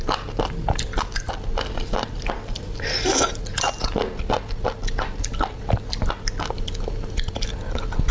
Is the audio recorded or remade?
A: recorded